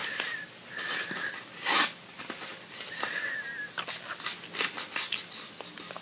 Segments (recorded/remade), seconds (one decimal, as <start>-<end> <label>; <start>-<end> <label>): 0.0-6.0 recorded